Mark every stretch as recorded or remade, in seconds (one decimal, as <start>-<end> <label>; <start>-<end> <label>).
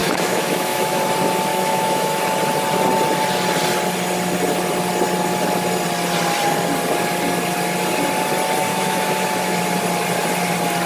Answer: 0.0-1.0 remade; 1.0-1.5 recorded; 1.5-2.2 remade; 2.2-8.7 recorded; 8.7-9.6 remade; 9.6-10.9 recorded